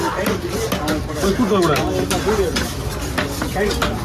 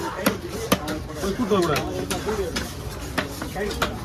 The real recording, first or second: first